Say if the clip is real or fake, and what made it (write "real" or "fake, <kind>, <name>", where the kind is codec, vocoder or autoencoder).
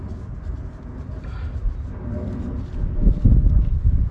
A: real